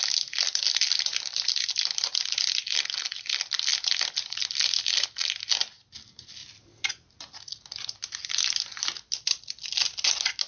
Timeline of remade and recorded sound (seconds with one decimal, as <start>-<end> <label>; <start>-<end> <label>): 0.0-10.5 recorded